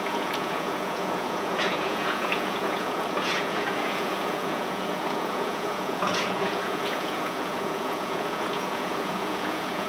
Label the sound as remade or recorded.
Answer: remade